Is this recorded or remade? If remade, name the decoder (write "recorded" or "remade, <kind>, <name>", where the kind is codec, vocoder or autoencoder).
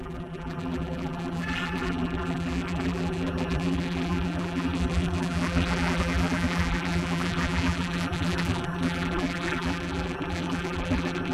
remade, vocoder, BigVGAN v2